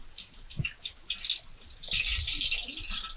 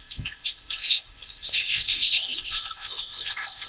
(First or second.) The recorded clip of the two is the first